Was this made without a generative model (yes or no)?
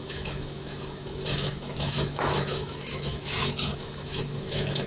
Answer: no